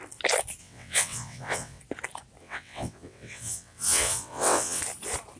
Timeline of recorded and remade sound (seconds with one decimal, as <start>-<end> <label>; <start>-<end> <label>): 0.0-0.6 recorded; 0.6-1.8 remade; 1.8-2.4 recorded; 2.4-4.8 remade; 4.8-5.4 recorded